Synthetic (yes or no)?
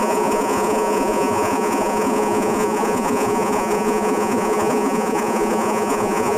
yes